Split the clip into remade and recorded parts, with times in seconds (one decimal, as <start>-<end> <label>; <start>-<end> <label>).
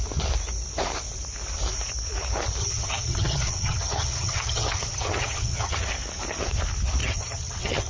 0.0-2.6 recorded; 2.6-5.9 remade; 5.9-7.0 recorded; 7.0-7.9 remade